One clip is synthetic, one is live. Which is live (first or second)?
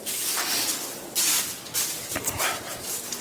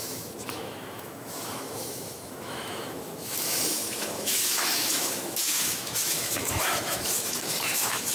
first